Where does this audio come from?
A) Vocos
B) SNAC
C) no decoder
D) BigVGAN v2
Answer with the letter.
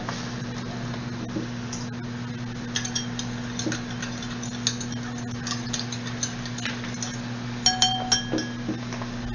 C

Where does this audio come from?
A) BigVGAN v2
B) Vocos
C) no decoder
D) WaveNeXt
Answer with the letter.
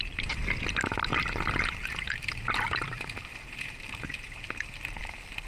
C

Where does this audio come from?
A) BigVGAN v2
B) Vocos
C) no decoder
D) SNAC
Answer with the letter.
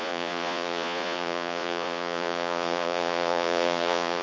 B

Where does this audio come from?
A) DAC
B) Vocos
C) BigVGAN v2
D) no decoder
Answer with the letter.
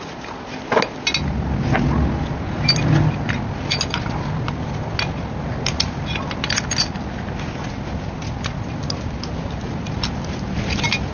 D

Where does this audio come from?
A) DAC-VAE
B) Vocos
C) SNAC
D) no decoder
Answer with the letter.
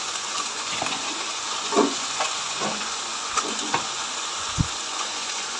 B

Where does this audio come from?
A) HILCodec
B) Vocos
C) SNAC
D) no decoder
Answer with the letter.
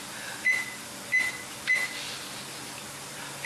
D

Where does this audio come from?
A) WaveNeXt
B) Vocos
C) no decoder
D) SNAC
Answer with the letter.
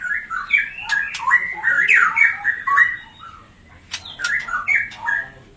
C